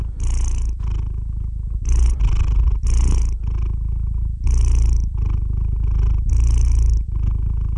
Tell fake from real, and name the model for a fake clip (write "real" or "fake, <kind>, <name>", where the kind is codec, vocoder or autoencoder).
real